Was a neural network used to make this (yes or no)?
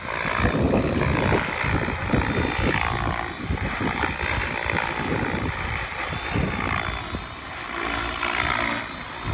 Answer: no